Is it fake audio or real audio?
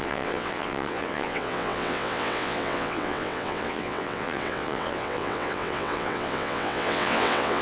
fake